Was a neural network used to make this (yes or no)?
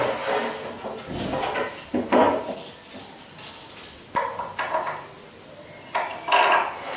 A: no